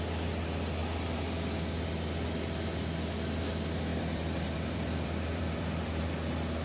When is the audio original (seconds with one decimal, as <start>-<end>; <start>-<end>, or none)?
0.0-3.9; 6.0-6.6